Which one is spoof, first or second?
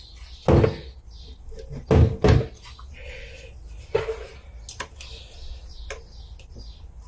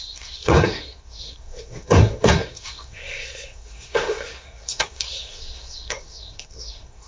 second